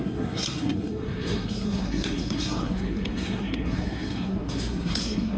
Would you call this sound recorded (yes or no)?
no